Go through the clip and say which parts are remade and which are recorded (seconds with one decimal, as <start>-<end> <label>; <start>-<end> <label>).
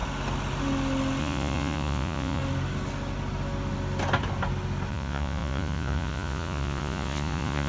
0.0-1.2 recorded; 1.2-2.4 remade; 2.4-4.9 recorded; 4.9-7.7 remade